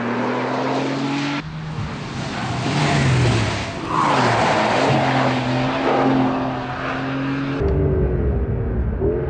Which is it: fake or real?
real